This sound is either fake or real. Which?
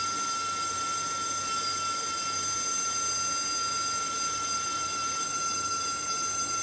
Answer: real